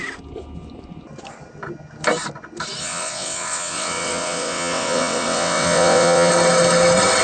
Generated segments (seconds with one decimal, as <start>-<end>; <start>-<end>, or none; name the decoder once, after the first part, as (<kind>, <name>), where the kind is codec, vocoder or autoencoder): 2.8-6.3 (vocoder, WaveNeXt)